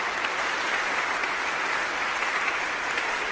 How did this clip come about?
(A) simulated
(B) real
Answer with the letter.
A